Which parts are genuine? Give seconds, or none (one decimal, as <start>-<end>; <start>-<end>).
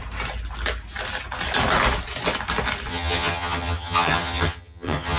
0.0-2.9